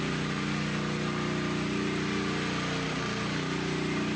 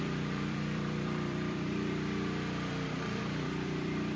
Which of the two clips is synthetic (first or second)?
second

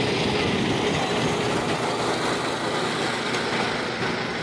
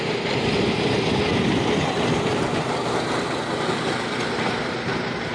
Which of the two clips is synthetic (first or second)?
second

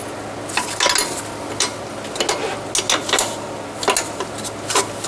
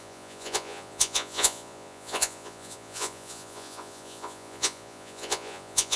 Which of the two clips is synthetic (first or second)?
second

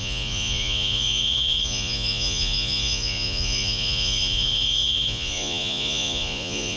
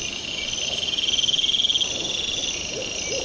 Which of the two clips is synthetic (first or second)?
first